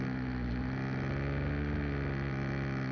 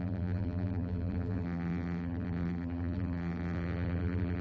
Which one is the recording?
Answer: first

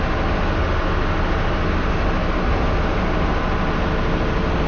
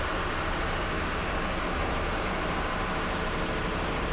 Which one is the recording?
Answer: first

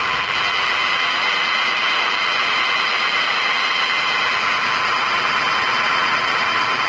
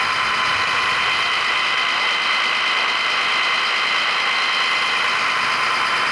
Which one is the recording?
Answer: second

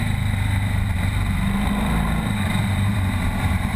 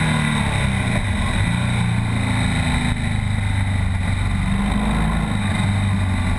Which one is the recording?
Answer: second